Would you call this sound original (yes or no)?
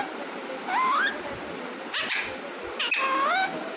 yes